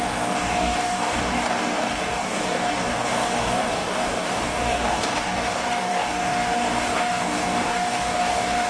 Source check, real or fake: fake